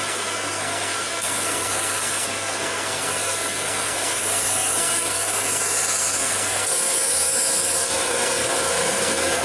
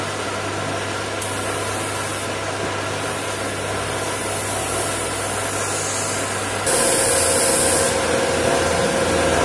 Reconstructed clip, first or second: first